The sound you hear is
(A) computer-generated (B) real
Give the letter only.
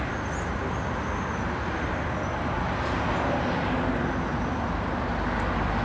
B